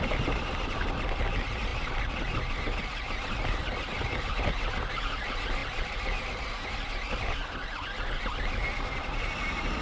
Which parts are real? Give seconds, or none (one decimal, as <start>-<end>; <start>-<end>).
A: 0.0-9.8